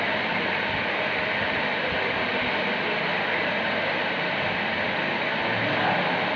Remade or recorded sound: recorded